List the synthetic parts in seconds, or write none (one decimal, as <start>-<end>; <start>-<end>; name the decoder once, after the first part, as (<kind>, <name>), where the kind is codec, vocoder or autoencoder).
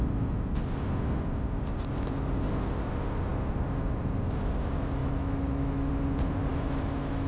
5.0-5.9 (autoencoder, DAC-VAE); 6.5-7.3